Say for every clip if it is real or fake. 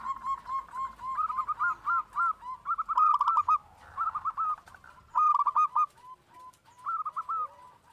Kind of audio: real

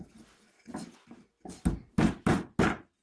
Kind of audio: real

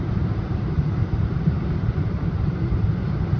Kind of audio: fake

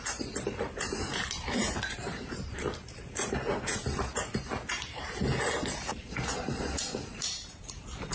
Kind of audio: fake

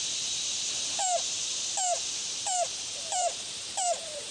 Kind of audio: fake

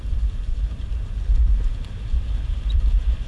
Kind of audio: fake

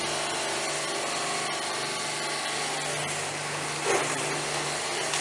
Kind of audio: real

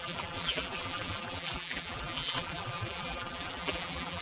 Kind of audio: fake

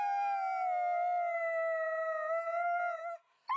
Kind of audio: real